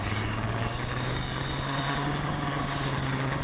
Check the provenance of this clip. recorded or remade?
remade